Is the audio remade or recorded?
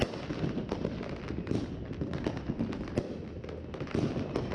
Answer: recorded